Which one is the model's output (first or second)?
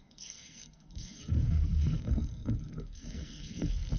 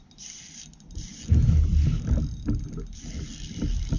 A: first